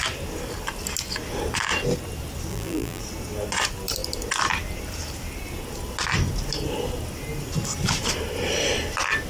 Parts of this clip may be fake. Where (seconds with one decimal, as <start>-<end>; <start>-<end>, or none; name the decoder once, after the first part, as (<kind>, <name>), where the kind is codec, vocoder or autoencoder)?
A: 2.5-3.0 (vocoder, BigVGAN v2)